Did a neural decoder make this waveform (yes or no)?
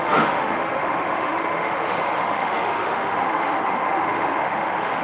yes